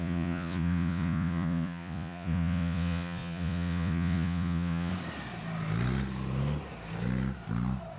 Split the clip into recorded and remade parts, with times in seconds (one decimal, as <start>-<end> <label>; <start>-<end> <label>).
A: 0.0-4.9 remade; 4.9-8.0 recorded